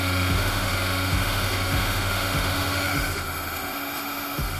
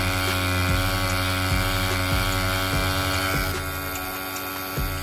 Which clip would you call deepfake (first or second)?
first